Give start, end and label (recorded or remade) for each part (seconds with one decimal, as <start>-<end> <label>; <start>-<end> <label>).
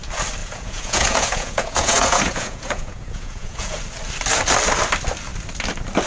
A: 0.0-0.4 recorded; 0.4-3.8 remade; 3.8-6.1 recorded